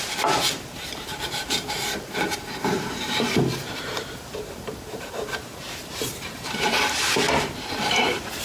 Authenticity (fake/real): fake